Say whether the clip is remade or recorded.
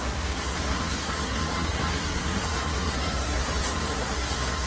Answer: remade